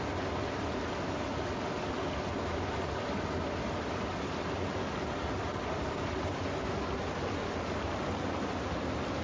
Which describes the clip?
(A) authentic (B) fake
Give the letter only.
A